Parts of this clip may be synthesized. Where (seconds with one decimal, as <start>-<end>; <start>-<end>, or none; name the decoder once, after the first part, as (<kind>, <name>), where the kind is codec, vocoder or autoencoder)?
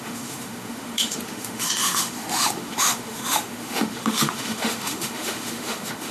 0.0-6.1 (autoencoder, DAC-VAE)